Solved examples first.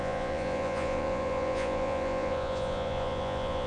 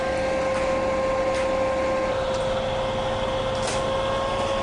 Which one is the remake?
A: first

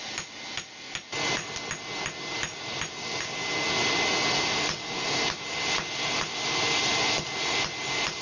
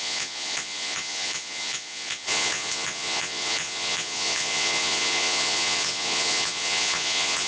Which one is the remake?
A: second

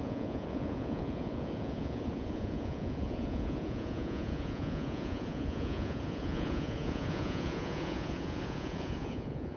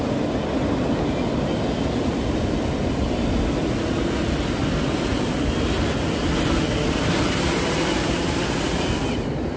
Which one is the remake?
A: first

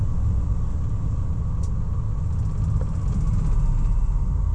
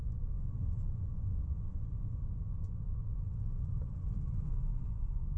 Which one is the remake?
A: second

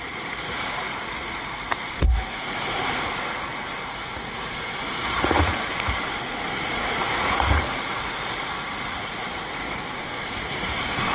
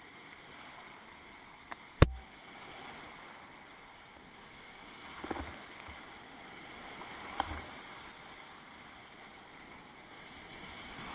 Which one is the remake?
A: first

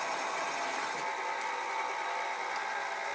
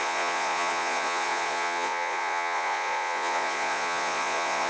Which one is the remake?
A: second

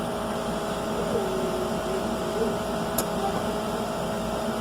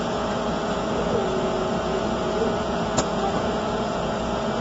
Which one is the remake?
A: second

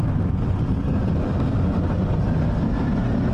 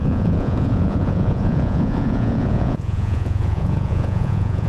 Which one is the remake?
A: second